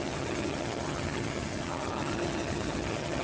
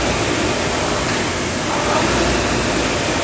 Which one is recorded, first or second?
second